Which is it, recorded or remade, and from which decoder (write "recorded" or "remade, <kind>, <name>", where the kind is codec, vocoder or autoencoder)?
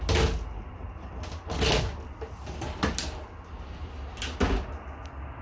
recorded